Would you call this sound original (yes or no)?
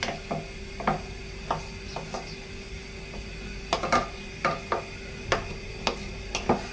yes